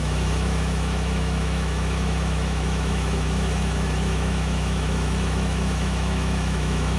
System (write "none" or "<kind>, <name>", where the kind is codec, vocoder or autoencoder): autoencoder, DAC-VAE